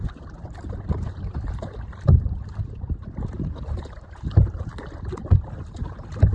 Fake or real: real